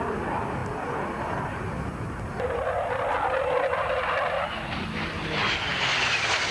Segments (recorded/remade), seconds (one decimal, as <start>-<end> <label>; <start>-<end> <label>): 0.0-6.5 recorded